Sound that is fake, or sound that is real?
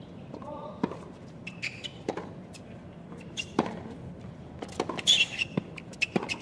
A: fake